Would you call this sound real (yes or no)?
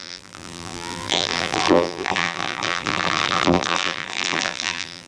no